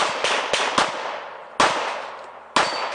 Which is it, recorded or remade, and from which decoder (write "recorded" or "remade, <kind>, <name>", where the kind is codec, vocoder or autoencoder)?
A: recorded